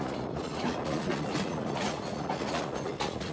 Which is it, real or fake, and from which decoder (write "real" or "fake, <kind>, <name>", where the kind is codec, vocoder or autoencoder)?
fake, vocoder, Vocos